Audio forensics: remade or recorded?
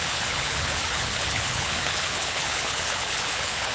remade